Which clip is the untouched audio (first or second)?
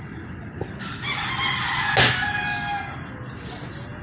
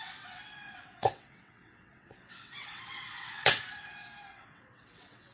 first